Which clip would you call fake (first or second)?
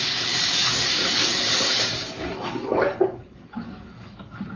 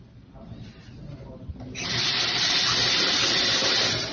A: first